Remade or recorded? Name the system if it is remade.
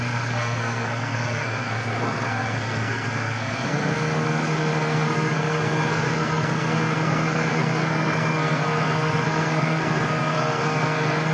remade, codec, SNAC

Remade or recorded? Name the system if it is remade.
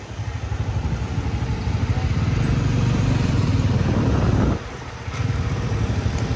recorded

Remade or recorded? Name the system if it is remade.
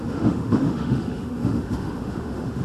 remade, autoencoder, DAC-VAE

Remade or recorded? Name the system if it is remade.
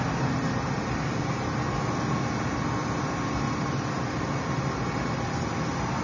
recorded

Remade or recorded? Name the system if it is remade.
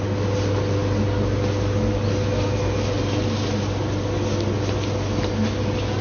recorded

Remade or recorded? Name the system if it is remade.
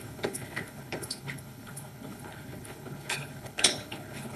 remade, codec, HILCodec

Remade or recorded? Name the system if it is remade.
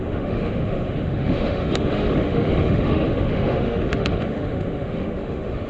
remade, autoencoder, DAC-VAE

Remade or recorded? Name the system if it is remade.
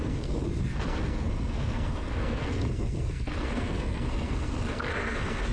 remade, codec, SNAC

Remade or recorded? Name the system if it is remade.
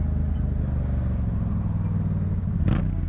recorded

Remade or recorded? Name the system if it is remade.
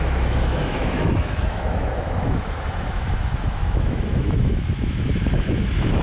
remade, autoencoder, DAC-VAE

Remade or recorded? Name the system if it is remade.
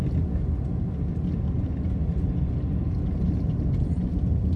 recorded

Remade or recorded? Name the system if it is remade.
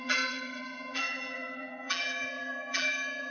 remade, vocoder, BigVGAN v2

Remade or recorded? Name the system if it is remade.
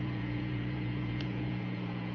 remade, vocoder, Vocos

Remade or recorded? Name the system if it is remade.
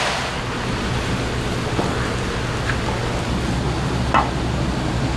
recorded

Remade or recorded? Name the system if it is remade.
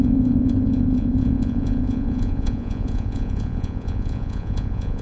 remade, vocoder, Vocos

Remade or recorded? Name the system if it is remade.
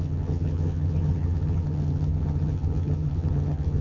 remade, vocoder, HiFi-GAN